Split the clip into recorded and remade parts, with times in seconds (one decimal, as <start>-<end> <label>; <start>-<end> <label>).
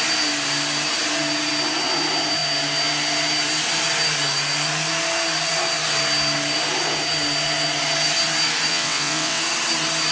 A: 0.0-8.7 recorded; 8.7-9.4 remade; 9.4-10.1 recorded